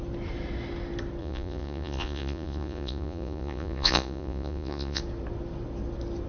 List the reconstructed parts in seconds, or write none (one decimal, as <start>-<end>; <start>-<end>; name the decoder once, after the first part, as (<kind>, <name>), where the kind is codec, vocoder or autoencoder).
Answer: 1.2-5.0 (vocoder, Vocos)